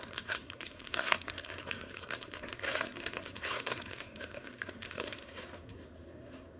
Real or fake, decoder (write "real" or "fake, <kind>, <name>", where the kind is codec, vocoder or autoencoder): fake, codec, SNAC